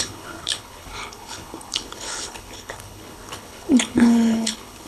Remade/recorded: remade